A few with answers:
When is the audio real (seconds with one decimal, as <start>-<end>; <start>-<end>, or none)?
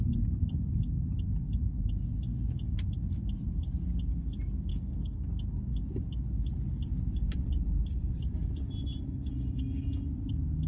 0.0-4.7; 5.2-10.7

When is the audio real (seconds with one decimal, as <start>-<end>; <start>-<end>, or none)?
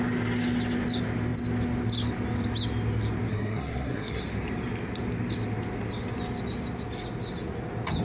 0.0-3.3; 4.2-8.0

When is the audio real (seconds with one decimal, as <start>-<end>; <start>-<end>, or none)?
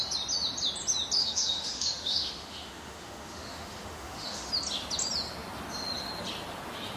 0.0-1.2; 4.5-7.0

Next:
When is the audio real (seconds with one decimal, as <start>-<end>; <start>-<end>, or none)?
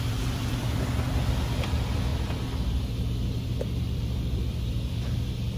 2.1-3.6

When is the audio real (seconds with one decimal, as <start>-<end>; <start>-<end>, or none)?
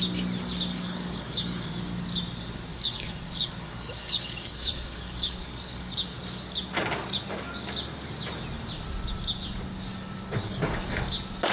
0.0-0.7; 1.8-2.7; 5.9-10.4; 10.9-11.5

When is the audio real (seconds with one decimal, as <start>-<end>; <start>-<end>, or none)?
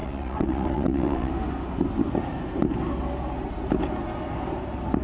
1.3-5.0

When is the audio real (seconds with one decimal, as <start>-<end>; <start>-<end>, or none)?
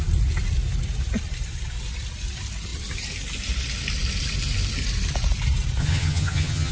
0.0-5.8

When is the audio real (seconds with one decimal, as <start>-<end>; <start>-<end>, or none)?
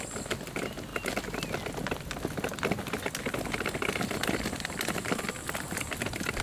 0.0-6.4